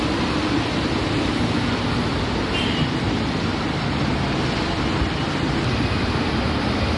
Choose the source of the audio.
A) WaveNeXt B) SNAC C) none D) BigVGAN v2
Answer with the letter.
D